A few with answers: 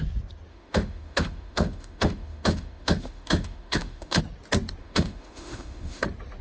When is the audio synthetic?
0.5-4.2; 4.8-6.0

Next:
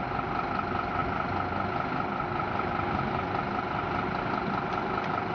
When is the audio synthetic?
none

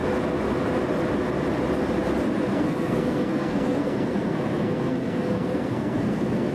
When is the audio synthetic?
2.5-6.5

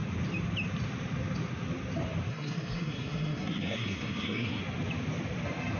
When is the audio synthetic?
2.3-4.6